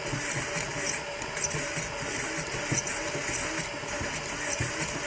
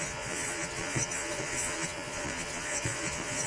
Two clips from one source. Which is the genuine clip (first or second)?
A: first